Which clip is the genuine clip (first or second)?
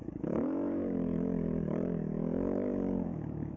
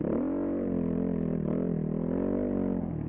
second